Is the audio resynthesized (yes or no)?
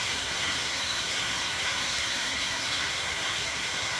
yes